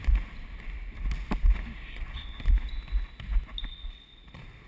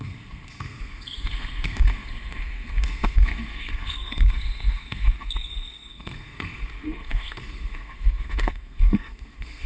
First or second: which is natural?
first